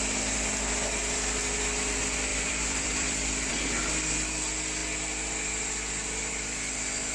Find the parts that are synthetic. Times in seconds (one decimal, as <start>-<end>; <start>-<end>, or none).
2.3-3.5